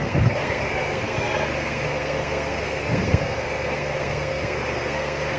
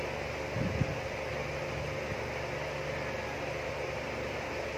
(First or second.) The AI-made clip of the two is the first